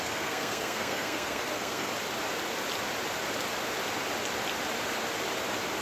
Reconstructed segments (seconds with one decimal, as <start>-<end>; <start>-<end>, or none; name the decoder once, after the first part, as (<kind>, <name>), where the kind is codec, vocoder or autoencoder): 0.0-1.9 (codec, SNAC)